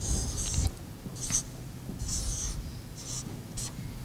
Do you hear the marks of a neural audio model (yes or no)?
no